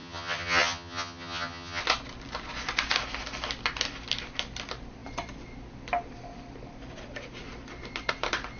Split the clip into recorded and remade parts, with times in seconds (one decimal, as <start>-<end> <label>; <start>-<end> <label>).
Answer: 0.0-1.8 remade; 1.8-8.6 recorded